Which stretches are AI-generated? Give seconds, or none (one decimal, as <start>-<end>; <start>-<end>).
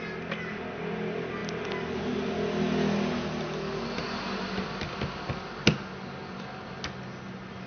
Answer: none